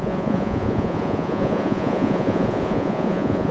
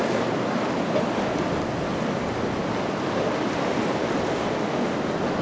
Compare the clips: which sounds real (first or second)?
second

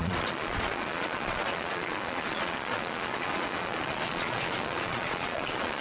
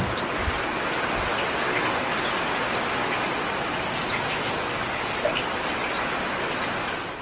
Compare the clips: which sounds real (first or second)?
second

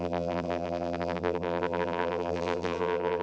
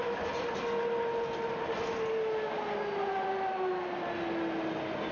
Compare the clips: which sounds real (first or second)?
second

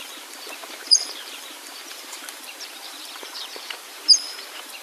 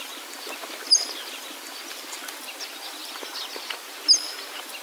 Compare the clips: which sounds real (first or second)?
second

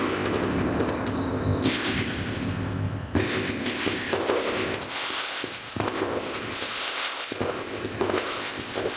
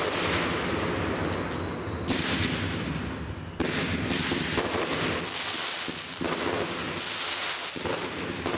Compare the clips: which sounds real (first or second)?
second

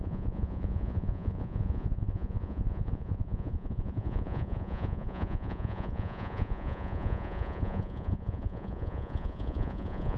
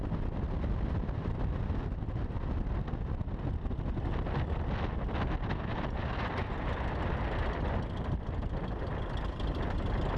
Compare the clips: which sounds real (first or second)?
second